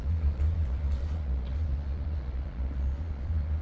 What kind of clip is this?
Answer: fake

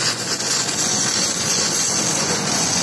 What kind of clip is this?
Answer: fake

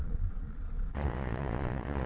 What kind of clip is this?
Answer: fake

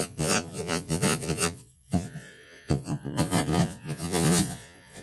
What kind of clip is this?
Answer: fake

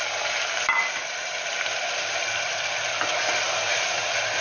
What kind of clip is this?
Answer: real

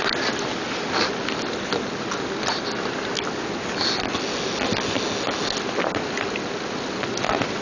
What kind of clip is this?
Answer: real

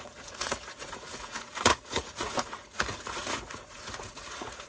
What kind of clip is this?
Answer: fake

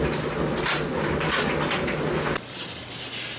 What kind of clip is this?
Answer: real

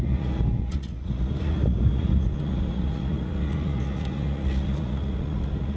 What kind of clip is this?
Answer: fake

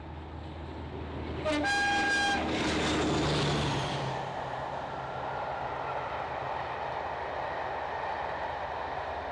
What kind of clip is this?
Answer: real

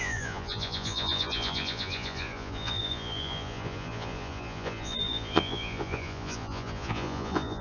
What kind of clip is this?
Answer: fake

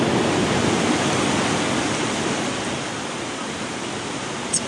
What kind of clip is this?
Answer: real